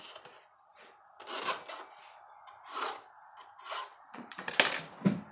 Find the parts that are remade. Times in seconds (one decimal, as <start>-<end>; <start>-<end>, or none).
3.9-4.5